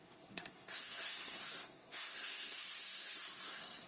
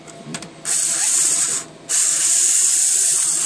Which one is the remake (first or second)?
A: first